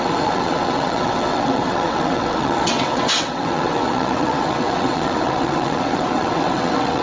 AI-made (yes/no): yes